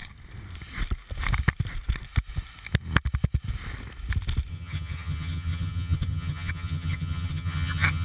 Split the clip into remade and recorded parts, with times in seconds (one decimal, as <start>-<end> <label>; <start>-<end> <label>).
0.0-4.5 recorded; 4.5-8.0 remade